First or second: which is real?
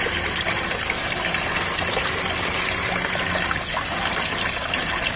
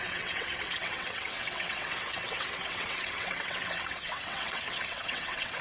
first